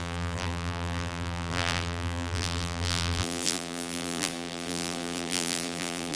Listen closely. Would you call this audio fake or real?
fake